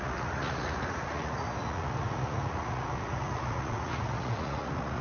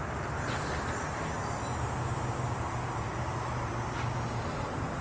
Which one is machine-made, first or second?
first